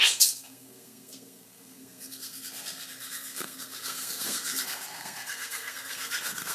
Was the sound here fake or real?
fake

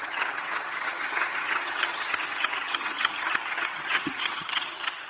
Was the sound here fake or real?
fake